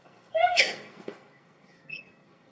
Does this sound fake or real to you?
fake